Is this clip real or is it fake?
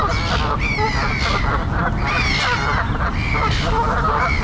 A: real